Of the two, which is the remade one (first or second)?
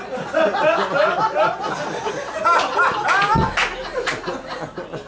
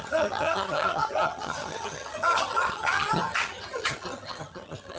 second